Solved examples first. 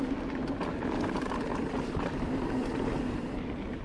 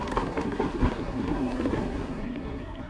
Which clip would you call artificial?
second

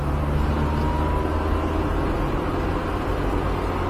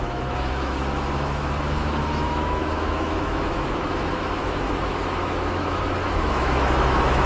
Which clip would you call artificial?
second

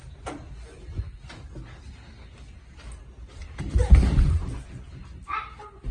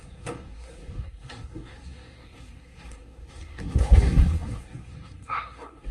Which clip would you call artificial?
second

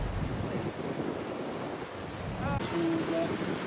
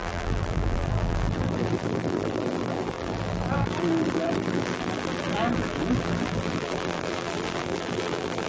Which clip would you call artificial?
second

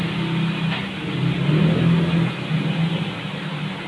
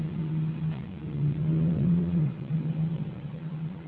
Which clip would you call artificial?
second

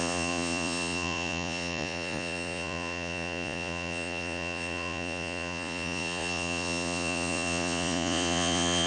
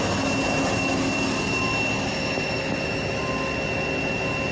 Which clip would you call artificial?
first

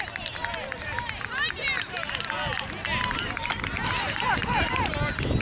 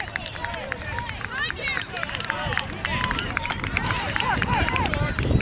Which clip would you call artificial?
second